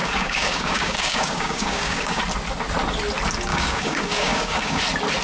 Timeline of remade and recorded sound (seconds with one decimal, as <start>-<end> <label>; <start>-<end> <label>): 0.0-2.2 remade; 2.2-3.5 recorded; 3.5-4.8 remade; 4.8-5.2 recorded

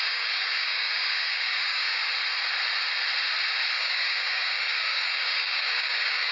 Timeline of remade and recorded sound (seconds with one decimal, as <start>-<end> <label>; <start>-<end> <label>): 0.0-2.0 remade; 2.0-3.7 recorded; 3.7-6.3 remade

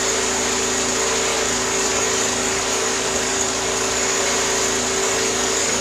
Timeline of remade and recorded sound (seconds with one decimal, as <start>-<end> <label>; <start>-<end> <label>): 0.0-1.3 recorded; 1.3-4.2 remade; 4.2-5.0 recorded; 5.0-5.8 remade

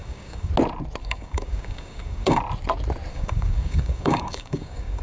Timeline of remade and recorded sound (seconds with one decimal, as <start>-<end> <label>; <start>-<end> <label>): 0.0-0.5 remade; 0.5-1.0 recorded; 1.0-2.4 remade; 2.4-3.1 recorded; 3.1-5.0 remade

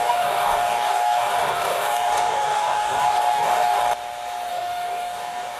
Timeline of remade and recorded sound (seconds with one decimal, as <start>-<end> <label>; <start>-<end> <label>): 0.0-3.8 remade; 3.8-4.5 recorded; 4.5-5.6 remade

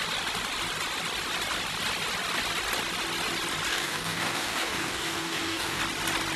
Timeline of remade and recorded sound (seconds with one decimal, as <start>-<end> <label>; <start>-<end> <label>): 0.0-3.7 recorded; 3.7-5.8 remade; 5.8-6.4 recorded

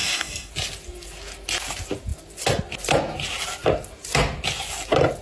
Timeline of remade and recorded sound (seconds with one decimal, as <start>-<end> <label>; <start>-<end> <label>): 0.0-0.5 remade; 0.5-5.2 recorded

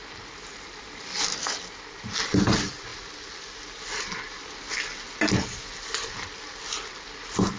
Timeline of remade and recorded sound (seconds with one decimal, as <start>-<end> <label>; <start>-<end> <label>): 0.0-7.6 recorded